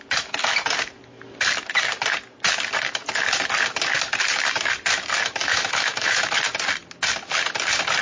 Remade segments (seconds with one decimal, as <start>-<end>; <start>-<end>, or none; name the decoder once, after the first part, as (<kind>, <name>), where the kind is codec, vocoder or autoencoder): 5.4-6.2 (autoencoder, DAC-VAE)